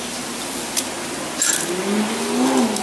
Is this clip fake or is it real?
real